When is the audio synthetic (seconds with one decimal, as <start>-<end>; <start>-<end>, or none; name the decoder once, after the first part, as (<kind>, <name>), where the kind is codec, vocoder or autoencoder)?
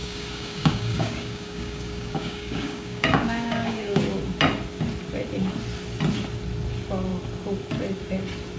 0.0-4.0 (codec, DAC)